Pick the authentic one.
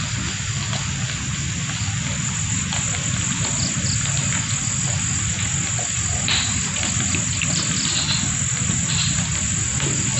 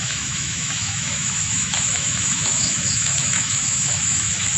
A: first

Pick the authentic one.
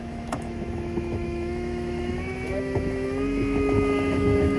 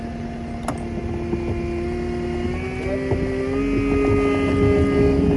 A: second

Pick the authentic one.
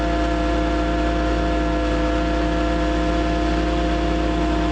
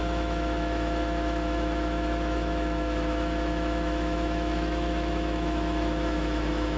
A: first